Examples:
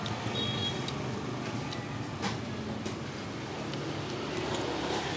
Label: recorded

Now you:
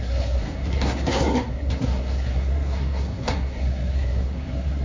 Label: remade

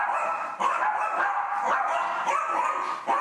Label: recorded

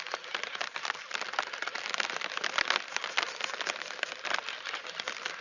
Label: recorded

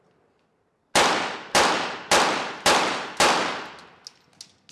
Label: recorded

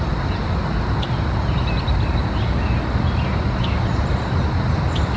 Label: recorded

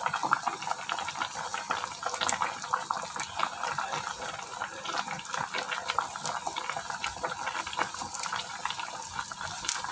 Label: recorded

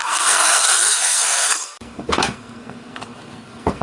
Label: remade